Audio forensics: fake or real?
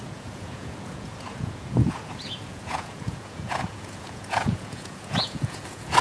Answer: fake